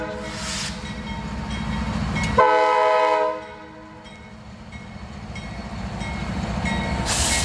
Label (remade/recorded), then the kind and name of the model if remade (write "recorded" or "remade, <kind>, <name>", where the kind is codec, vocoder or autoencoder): recorded